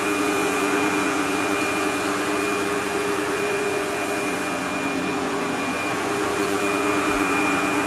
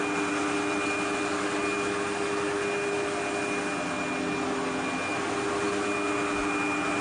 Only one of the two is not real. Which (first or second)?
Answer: first